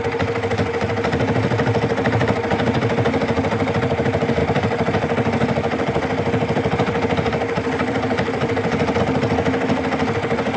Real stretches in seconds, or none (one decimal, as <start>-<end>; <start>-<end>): 0.0-4.4; 9.0-10.6